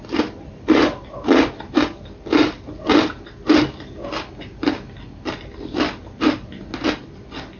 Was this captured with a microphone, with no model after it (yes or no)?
yes